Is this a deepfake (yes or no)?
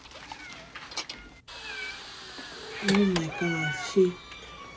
no